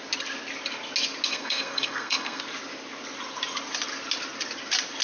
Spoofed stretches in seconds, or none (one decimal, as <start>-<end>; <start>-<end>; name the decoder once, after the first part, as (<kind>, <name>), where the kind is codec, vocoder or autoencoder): 1.3-2.4 (codec, SNAC)

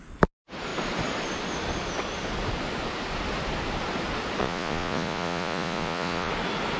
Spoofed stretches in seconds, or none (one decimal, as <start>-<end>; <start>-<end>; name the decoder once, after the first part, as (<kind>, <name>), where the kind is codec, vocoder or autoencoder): 4.4-6.3 (vocoder, Vocos)

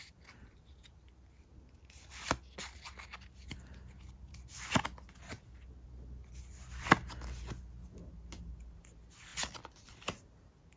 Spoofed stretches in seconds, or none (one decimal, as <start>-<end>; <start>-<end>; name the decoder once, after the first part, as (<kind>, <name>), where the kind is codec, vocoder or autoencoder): none

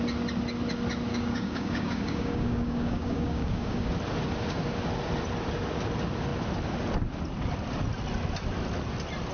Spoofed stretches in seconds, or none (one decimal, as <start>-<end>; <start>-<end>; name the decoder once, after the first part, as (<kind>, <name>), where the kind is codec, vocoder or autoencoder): 1.1-3.9 (codec, DAC)

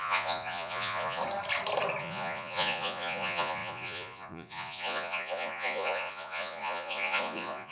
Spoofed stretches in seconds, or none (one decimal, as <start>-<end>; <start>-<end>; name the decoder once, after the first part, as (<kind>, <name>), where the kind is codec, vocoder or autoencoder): 0.0-1.2 (vocoder, Vocos); 2.0-7.7

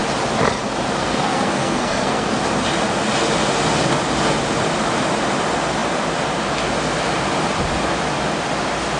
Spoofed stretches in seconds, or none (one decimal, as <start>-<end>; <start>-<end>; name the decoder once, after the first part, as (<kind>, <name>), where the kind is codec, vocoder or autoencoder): 1.0-2.4 (codec, SNAC)